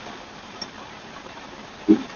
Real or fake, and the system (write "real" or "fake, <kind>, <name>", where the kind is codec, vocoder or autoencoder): fake, vocoder, BigVGAN v2